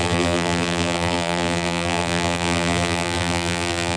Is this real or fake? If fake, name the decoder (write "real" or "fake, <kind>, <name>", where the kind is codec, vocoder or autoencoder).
fake, vocoder, BigVGAN v2